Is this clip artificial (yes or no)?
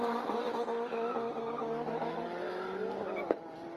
no